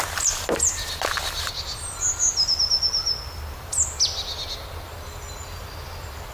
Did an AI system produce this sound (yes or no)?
no